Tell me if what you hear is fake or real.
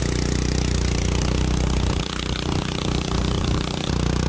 fake